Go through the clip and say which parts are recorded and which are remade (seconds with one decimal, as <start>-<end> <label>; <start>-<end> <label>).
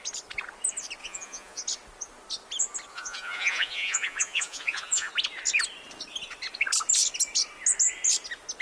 0.0-1.0 recorded; 1.0-1.6 remade; 1.6-2.9 recorded; 2.9-5.1 remade; 5.1-8.6 recorded